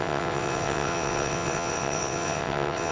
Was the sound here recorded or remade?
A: remade